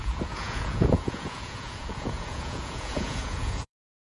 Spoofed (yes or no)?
yes